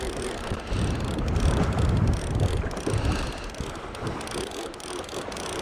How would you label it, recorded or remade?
recorded